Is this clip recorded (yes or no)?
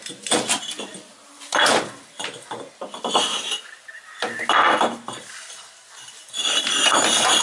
yes